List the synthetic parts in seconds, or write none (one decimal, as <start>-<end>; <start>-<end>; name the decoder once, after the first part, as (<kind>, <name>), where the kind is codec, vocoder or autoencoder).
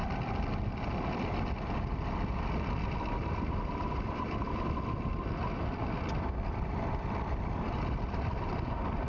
none